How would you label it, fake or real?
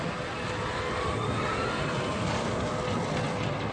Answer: real